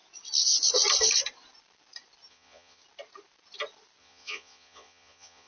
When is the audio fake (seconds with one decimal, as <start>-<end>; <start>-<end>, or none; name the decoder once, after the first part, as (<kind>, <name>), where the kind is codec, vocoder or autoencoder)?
2.3-2.8 (vocoder, Vocos); 4.0-5.5